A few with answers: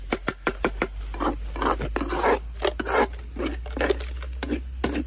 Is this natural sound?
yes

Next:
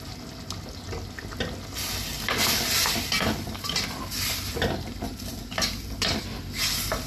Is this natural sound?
yes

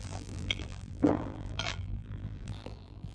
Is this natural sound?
no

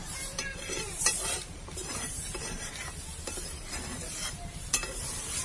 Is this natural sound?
no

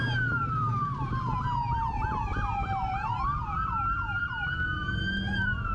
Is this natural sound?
no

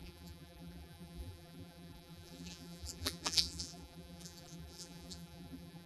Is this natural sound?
no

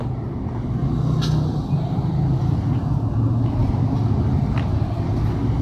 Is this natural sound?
yes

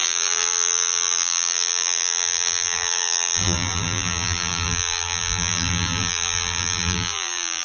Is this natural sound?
no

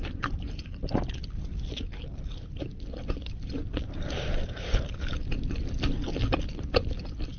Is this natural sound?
no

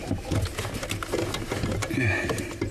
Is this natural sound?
yes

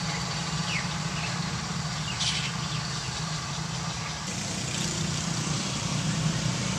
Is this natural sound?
no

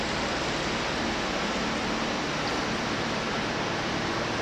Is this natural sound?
no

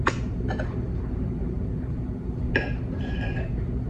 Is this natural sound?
no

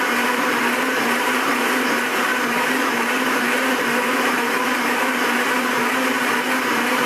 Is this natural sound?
no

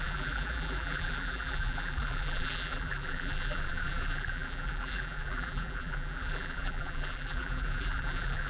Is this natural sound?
no